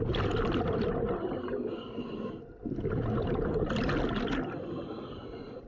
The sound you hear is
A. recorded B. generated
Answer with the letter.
A